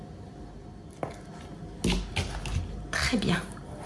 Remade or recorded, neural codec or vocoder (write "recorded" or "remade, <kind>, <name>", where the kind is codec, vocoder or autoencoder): recorded